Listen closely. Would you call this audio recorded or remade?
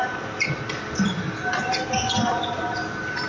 recorded